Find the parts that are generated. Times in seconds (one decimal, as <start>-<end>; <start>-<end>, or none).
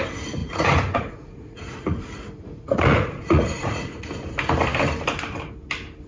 0.4-4.1